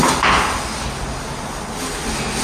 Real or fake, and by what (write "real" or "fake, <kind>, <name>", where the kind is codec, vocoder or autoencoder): real